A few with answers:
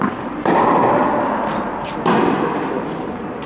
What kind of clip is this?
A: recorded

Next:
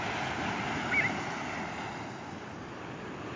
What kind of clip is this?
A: recorded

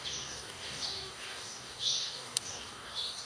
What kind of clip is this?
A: remade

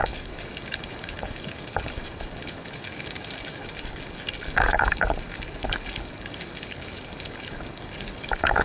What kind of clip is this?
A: remade